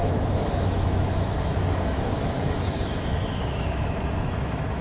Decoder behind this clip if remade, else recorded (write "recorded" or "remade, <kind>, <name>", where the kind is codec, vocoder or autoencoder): remade, autoencoder, DAC-VAE